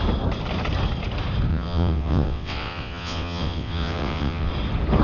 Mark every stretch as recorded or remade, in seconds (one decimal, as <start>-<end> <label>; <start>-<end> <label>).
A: 0.0-1.5 recorded; 1.5-4.5 remade; 4.5-5.0 recorded